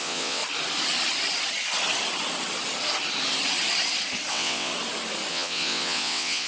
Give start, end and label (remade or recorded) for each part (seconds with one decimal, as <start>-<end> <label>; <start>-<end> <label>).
0.0-0.4 remade; 0.4-4.3 recorded; 4.3-4.7 remade; 4.7-5.3 recorded; 5.3-6.5 remade